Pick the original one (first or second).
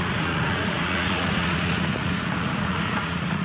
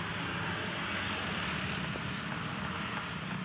second